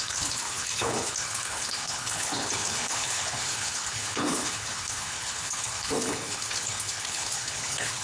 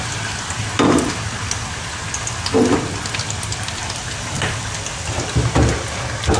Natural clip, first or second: second